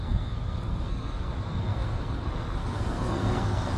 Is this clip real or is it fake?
fake